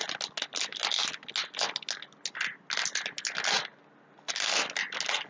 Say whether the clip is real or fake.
real